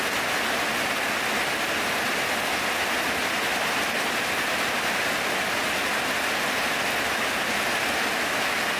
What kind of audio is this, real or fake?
real